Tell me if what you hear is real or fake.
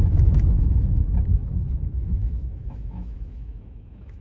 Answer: fake